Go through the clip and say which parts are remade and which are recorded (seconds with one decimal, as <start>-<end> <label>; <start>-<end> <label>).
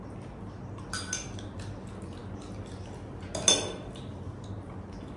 0.0-5.2 recorded